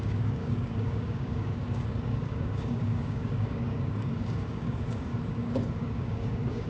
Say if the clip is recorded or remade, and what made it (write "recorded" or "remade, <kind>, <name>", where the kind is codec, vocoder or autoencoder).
remade, codec, DAC